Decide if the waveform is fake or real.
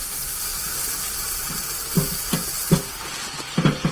real